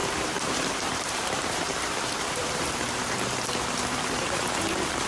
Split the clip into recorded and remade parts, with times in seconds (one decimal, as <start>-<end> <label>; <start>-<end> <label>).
0.0-1.6 remade; 1.6-2.4 recorded; 2.4-3.3 remade; 3.3-5.1 recorded